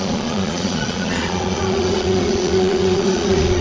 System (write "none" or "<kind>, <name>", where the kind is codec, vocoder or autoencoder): vocoder, Vocos